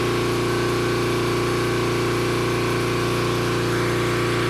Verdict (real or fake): real